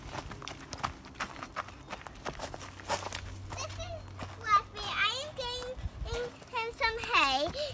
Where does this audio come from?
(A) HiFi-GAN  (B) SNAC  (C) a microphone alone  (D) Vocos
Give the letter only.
C